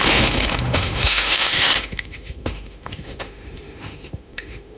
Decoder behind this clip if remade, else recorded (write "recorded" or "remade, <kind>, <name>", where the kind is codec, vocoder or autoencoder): remade, autoencoder, DAC-VAE